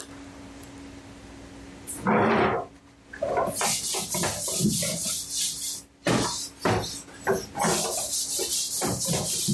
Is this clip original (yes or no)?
yes